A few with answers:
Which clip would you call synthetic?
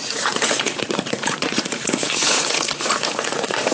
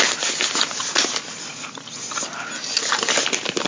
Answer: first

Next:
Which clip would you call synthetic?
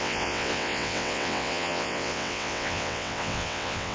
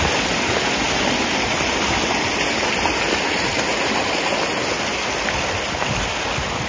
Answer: first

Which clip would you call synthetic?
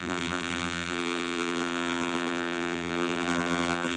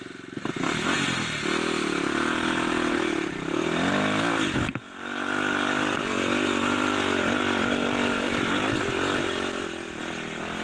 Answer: first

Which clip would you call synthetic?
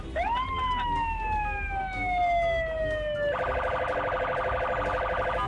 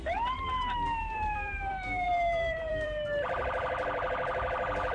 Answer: second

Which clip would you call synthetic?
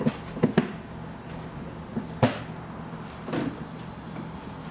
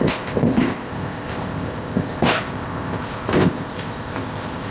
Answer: second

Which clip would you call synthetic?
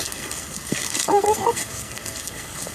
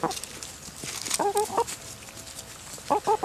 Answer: first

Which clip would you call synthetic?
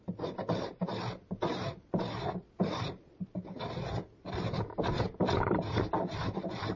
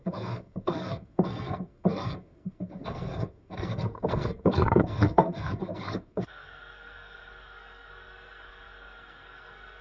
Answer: second